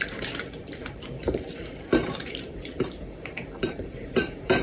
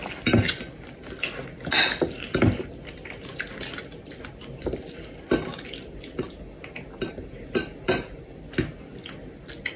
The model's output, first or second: first